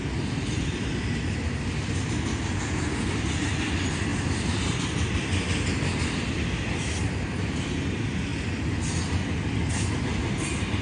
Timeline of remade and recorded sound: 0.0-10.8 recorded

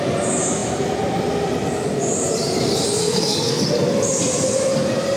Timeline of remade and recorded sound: 0.0-3.0 recorded; 3.0-3.6 remade; 3.6-5.2 recorded

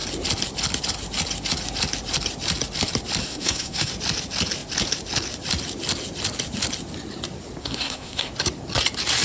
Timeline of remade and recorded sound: 0.0-3.2 recorded; 3.2-3.9 remade; 3.9-7.6 recorded; 7.6-8.3 remade; 8.3-9.2 recorded

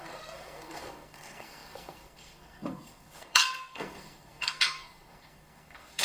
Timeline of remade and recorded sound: 0.0-6.0 remade

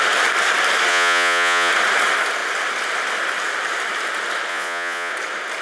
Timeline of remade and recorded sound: 0.0-0.9 recorded; 0.9-1.7 remade; 1.7-4.5 recorded; 4.5-5.1 remade; 5.1-5.6 recorded